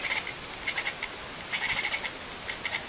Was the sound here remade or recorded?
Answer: recorded